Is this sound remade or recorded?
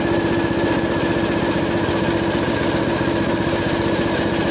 recorded